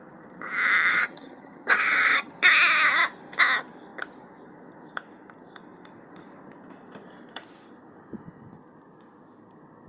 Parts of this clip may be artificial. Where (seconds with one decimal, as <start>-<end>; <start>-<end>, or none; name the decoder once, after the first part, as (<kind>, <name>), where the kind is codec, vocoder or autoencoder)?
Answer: 0.9-2.3 (vocoder, HiFi-GAN)